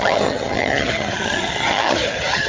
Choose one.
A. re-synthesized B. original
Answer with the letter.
A